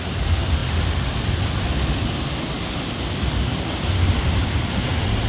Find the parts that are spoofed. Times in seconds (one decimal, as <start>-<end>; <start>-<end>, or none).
none